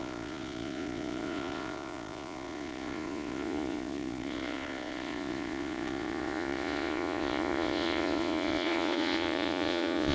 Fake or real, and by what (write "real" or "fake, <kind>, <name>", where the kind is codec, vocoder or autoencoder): fake, vocoder, Vocos